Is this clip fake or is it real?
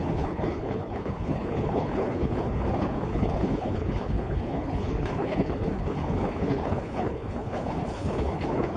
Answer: fake